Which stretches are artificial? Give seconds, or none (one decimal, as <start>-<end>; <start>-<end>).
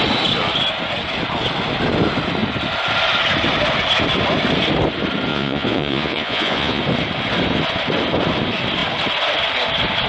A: 5.3-6.8